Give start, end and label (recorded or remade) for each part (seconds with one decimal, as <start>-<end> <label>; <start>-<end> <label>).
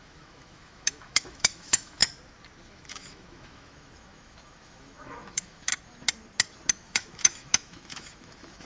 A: 0.0-2.0 remade; 2.0-2.6 recorded; 2.6-5.7 remade; 5.7-6.7 recorded; 6.7-8.7 remade